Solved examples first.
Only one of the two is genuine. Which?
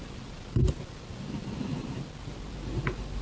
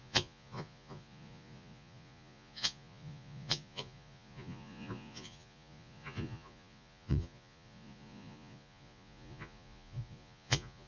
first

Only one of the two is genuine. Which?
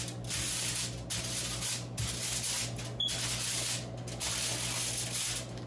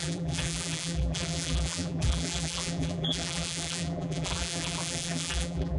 first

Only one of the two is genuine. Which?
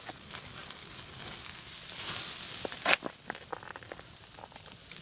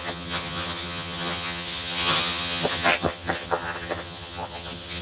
first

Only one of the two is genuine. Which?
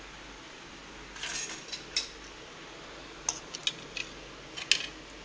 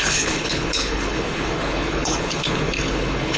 first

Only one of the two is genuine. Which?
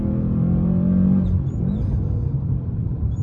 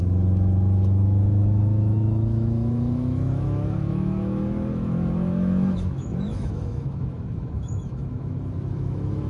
first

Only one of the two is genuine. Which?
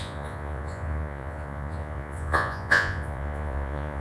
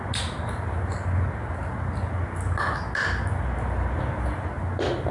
second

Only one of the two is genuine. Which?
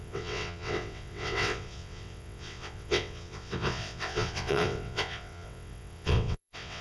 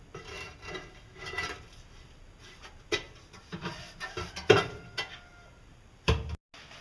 second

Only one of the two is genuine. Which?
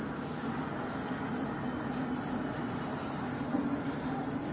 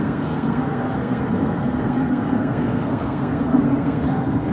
first